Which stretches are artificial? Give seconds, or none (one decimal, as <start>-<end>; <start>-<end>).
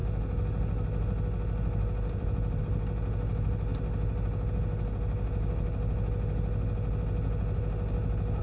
0.0-2.6; 3.7-4.5